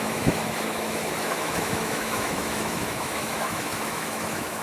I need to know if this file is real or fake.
fake